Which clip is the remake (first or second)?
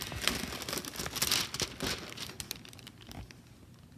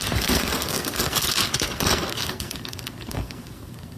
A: second